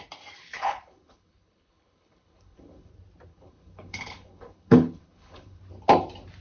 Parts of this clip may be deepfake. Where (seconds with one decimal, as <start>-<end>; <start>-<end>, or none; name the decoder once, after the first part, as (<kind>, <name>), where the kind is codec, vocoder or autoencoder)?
0.4-2.9 (codec, HILCodec); 3.3-5.6

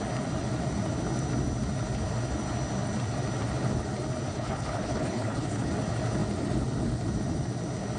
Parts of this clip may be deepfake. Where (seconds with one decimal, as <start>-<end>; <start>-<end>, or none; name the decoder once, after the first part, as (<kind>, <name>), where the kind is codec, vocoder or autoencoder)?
4.3-5.7 (codec, HILCodec)

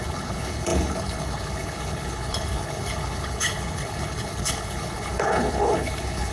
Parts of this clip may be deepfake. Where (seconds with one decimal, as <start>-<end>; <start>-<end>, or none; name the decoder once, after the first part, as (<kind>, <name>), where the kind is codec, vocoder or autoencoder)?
0.0-6.3 (codec, HILCodec)

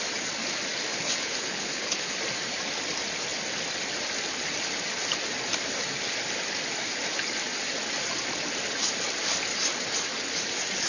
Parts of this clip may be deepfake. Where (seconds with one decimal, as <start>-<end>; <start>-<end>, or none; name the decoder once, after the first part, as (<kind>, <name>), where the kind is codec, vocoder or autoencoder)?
0.9-2.1 (codec, HILCodec)